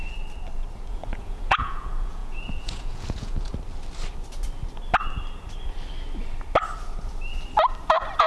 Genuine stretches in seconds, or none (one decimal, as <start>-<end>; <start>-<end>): 0.0-0.9; 3.5-8.3